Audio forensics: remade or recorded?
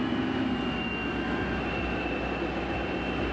recorded